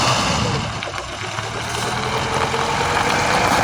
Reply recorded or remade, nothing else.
recorded